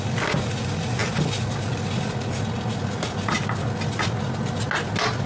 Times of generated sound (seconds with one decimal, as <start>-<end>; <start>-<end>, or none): none